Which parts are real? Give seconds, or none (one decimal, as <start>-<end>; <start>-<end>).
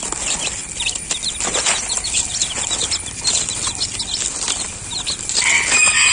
0.0-6.1